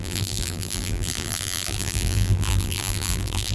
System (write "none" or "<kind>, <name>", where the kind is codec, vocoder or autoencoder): vocoder, BigVGAN v2